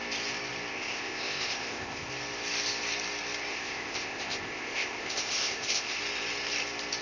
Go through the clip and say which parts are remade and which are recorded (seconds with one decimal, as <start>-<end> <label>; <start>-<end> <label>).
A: 0.0-0.7 recorded; 0.7-2.1 remade; 2.1-3.5 recorded; 3.5-6.0 remade; 6.0-7.0 recorded